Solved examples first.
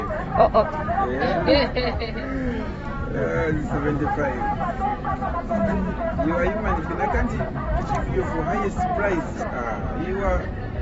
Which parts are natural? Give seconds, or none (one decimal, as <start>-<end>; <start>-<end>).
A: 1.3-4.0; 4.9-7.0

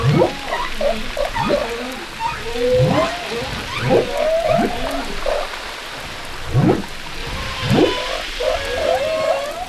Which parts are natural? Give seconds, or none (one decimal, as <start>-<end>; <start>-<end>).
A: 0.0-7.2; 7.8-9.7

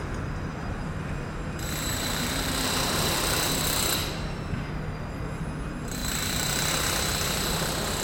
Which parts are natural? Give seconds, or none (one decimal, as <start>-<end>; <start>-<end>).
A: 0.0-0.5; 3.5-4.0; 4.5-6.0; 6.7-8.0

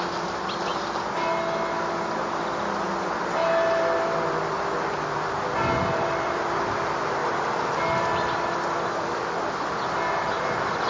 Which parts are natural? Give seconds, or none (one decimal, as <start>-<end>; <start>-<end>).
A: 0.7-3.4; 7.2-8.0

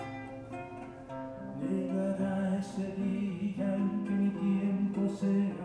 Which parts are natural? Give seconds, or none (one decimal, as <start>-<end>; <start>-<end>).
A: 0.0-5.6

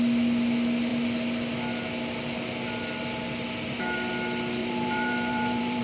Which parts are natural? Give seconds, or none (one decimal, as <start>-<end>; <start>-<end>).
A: 0.0-4.6